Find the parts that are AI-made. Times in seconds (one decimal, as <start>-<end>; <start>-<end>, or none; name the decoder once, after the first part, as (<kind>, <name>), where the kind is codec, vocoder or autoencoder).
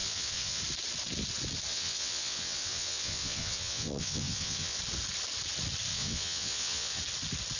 0.0-0.6 (vocoder, WaveNeXt); 1.7-4.8; 5.9-7.0